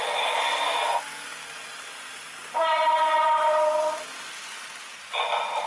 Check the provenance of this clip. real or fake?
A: real